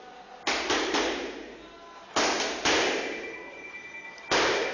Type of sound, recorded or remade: recorded